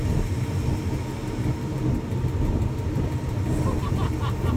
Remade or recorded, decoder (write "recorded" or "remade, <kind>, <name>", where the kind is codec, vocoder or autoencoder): recorded